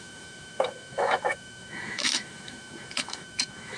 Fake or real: fake